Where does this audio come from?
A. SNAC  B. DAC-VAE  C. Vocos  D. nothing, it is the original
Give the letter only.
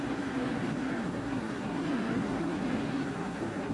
A